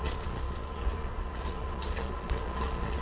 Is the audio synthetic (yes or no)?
yes